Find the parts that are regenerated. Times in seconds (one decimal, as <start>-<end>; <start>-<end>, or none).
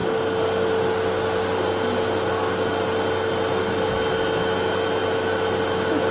none